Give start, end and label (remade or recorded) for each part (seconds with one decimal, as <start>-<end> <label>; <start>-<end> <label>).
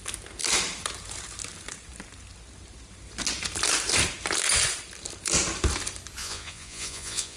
0.0-6.2 recorded; 6.2-7.4 remade